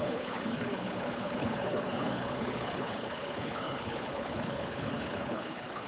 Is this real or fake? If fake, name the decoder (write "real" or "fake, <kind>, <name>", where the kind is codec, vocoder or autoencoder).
fake, codec, HILCodec